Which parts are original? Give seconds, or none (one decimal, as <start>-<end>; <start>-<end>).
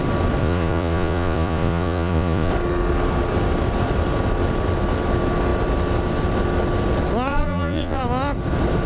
0.0-0.4; 2.5-7.3; 8.0-8.9